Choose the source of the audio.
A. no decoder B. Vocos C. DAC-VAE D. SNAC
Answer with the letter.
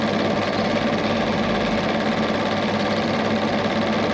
A